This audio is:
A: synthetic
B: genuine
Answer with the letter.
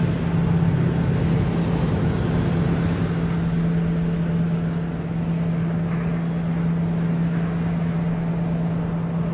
B